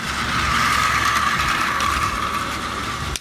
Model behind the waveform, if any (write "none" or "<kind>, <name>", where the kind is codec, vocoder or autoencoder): none